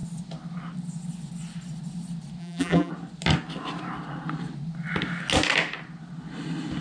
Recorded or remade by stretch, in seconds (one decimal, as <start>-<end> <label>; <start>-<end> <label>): 0.0-2.4 recorded; 2.4-2.9 remade; 2.9-6.8 recorded